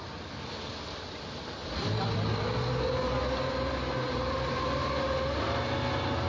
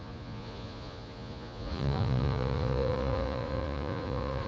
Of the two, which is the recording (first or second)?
first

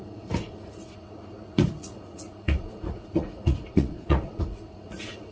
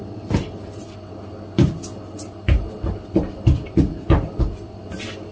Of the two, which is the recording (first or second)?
second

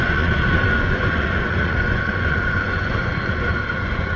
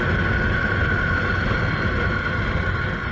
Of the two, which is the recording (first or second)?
second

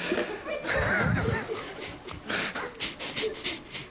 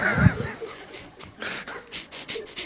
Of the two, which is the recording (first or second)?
first